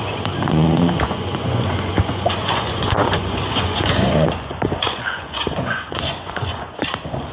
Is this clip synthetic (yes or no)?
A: yes